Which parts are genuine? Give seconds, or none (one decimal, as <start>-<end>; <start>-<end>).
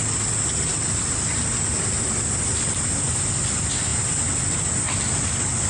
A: 0.0-5.7